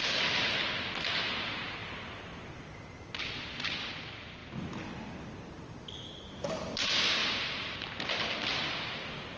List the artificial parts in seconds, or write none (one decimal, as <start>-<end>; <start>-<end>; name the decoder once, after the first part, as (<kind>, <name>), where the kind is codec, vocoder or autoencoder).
none

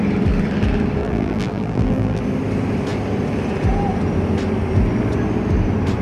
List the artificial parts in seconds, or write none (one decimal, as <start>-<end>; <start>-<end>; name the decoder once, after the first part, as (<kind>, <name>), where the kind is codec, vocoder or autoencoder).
1.0-2.2 (vocoder, BigVGAN v2)

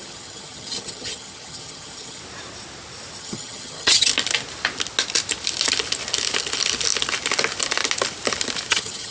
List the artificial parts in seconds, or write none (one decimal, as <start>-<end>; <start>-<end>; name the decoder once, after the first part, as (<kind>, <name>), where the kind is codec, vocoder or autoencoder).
0.0-2.2 (vocoder, HiFi-GAN); 3.2-4.1; 8.7-9.1

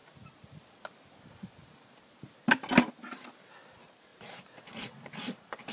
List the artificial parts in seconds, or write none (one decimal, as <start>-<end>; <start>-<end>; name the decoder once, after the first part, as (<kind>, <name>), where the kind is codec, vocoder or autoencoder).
4.1-5.7 (vocoder, BigVGAN v2)

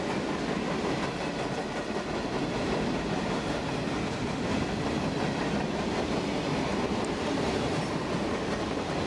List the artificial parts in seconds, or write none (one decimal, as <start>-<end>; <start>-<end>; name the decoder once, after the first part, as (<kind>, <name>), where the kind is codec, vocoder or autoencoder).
none

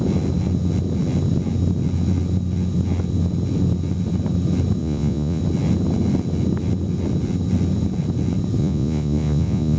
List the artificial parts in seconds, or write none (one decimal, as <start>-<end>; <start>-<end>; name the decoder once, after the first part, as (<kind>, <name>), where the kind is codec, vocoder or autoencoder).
4.8-5.4 (vocoder, Vocos); 8.6-9.8

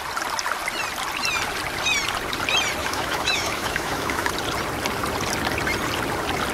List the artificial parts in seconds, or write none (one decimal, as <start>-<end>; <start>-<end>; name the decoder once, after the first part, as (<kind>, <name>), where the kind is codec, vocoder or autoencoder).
2.8-4.3 (autoencoder, DAC-VAE)